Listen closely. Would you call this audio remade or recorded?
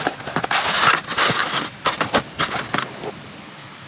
recorded